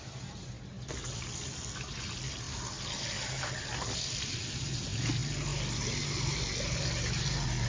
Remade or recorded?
recorded